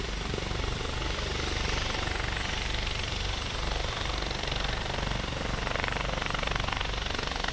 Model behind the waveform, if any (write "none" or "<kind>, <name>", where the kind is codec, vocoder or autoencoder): vocoder, BigVGAN v2